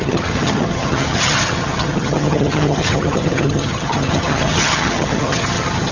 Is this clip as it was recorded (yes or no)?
no